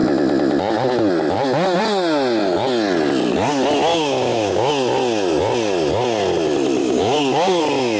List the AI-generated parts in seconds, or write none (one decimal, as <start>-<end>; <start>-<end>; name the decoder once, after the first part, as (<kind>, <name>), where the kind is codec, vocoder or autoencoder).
3.9-4.7 (codec, DAC); 6.8-7.6